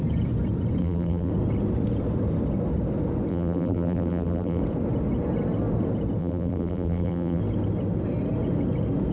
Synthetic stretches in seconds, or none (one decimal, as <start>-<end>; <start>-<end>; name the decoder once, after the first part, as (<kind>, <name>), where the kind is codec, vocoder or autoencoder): 0.8-1.3 (vocoder, BigVGAN v2); 3.3-4.6; 6.2-7.4

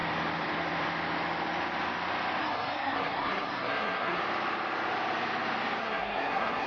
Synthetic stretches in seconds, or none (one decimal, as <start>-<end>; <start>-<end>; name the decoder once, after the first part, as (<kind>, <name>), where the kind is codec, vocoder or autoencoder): 2.4-4.2 (codec, SNAC); 5.8-6.7

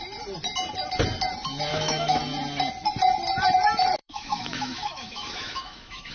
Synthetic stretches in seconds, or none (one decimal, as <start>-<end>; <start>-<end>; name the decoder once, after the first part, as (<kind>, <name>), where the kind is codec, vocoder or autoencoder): 1.7-2.2 (autoencoder, DAC-VAE); 4.0-6.1

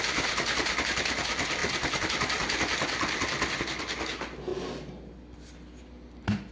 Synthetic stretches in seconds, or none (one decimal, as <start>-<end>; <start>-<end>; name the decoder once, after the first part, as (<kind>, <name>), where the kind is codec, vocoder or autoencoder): none

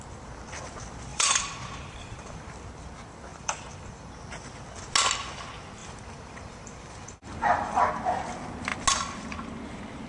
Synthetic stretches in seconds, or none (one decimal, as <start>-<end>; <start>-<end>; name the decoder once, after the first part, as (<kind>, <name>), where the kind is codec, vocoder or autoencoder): 1.1-2.5 (vocoder, BigVGAN v2); 3.3-4.1; 5.8-7.9

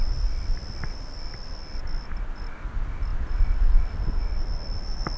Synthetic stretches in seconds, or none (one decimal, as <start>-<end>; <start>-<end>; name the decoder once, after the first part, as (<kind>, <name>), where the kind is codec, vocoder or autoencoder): none